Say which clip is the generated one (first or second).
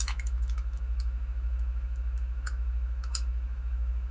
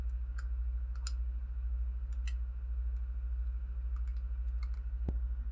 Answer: first